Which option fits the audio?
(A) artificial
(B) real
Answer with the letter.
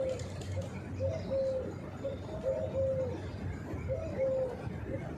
B